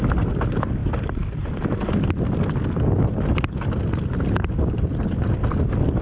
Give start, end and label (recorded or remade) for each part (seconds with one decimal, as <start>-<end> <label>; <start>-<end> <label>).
0.0-6.0 recorded